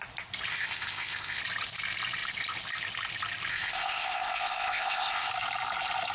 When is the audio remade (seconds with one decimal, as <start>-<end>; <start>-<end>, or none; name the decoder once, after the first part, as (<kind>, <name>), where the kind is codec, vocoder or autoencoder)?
0.5-1.4 (codec, ZipCodec); 3.5-5.3